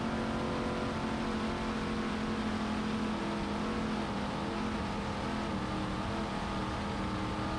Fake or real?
real